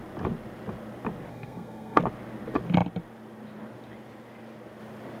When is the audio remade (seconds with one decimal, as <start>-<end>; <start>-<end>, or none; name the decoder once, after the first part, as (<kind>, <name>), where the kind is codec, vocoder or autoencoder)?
1.3-2.0 (codec, SNAC)